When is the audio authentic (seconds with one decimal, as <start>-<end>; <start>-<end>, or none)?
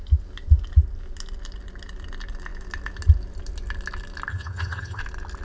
0.0-4.3; 5.0-5.4